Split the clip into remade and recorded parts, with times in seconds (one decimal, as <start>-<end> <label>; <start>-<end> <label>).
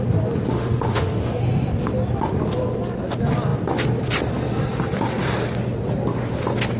0.0-0.5 recorded; 0.5-1.4 remade; 1.4-6.8 recorded